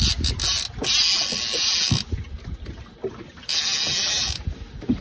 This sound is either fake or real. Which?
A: real